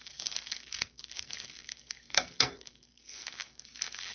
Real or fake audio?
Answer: fake